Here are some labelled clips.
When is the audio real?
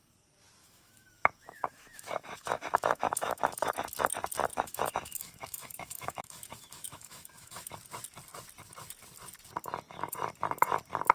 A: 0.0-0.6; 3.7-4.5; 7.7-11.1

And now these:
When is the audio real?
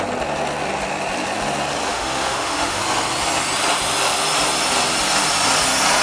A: 0.0-1.9; 2.8-6.0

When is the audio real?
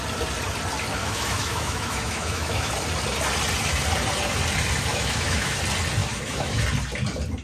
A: 0.0-1.0; 2.7-4.9; 5.6-6.0; 6.6-7.4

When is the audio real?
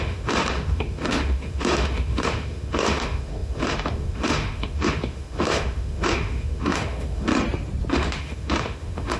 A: 7.3-7.9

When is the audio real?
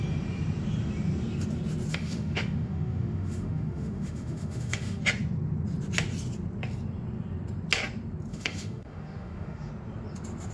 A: 0.0-1.9; 5.0-8.3; 9.7-10.5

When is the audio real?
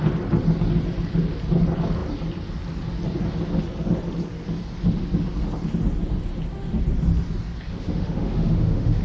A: 0.0-7.7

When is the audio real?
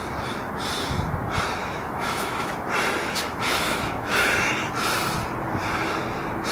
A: 0.0-1.6; 2.5-3.0; 4.5-6.5